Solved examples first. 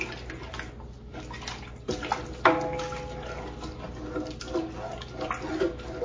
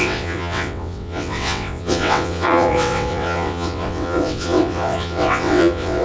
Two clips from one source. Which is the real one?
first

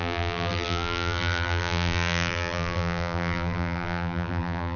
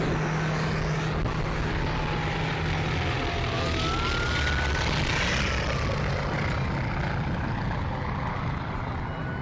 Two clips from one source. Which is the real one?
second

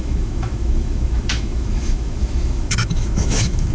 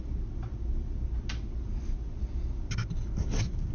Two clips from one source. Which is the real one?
second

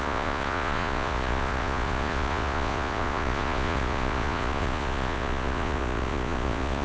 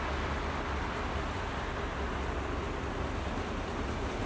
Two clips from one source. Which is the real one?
second